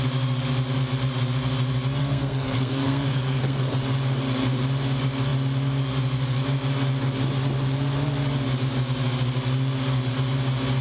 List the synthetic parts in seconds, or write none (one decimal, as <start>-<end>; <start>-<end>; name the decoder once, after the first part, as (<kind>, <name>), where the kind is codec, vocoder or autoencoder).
2.0-3.7 (codec, SNAC)